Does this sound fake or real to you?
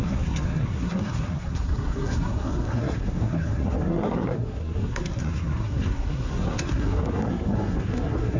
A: fake